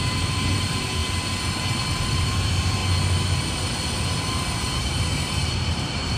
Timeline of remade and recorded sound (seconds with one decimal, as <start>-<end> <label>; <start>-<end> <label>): 0.0-1.0 remade; 1.0-2.1 recorded; 2.1-2.8 remade; 2.8-4.6 recorded; 4.6-6.2 remade